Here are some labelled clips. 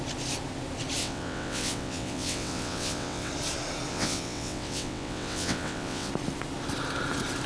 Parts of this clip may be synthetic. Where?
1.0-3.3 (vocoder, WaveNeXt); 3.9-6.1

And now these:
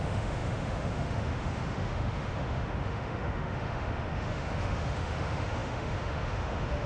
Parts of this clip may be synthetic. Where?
0.0-6.9 (autoencoder, DAC-VAE)